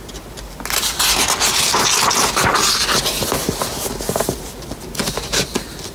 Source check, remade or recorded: recorded